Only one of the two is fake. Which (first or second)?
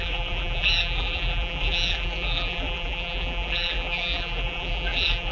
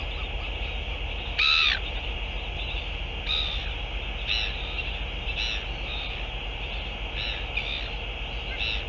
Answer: first